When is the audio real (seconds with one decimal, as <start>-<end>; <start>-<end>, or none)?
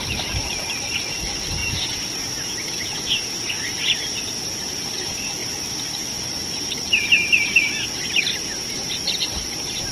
1.6-3.6; 5.4-5.9